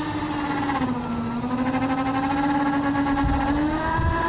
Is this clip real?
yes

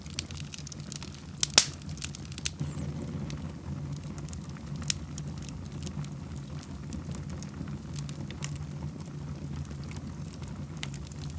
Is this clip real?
yes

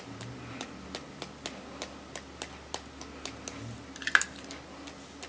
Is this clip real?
yes